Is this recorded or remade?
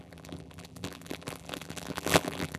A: remade